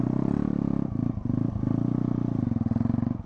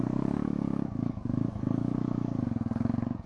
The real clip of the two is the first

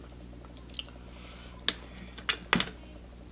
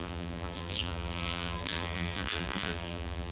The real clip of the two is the first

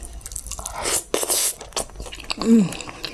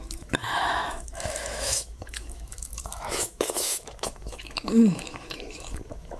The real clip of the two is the first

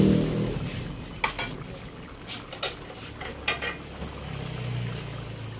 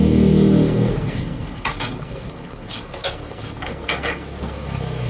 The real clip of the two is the first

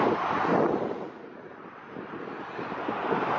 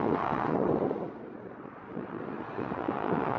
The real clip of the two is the first